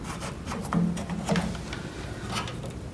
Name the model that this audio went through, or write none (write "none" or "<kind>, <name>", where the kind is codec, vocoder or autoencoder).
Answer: none